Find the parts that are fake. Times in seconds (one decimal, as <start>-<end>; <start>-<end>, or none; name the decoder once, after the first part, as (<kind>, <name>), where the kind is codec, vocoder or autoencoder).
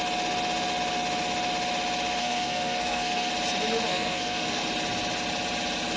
2.2-3.3 (codec, SNAC); 3.9-4.6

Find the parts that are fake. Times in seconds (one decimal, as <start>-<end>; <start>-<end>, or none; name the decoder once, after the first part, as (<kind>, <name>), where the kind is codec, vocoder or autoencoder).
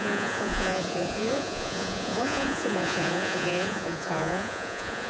0.0-5.1 (vocoder, Vocos)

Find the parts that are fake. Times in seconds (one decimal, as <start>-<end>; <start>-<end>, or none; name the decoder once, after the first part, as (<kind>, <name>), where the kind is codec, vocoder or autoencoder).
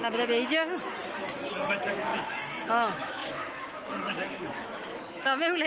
0.0-5.7 (autoencoder, DAC-VAE)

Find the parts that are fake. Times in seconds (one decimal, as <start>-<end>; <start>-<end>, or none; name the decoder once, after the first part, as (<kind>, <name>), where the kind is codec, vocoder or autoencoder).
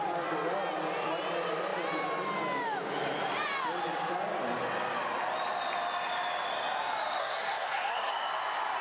7.2-8.1 (codec, SNAC)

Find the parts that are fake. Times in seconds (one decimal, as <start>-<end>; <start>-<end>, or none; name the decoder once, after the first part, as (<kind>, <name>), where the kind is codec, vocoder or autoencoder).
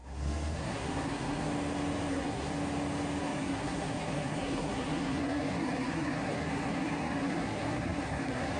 0.0-1.5 (codec, SNAC); 2.1-2.5; 3.2-8.6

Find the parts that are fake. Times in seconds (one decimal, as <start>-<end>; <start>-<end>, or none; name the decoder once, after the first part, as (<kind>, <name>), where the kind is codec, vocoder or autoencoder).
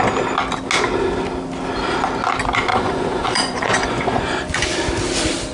2.7-4.7 (vocoder, Vocos)